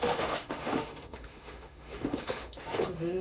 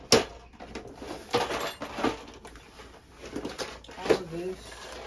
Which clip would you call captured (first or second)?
second